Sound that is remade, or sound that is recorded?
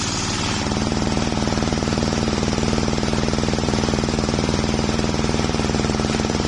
remade